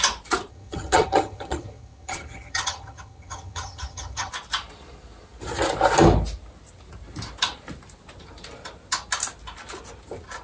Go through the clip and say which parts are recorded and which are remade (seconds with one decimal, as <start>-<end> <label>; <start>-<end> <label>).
0.0-0.5 recorded; 0.5-4.3 remade; 4.3-10.4 recorded